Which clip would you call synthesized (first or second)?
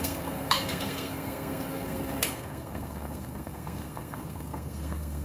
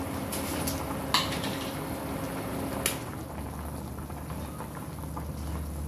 first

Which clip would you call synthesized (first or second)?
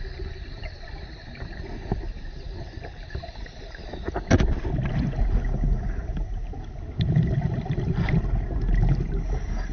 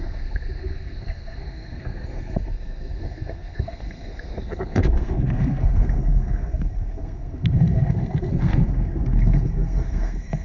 second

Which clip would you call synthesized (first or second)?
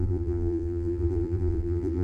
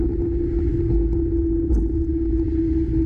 first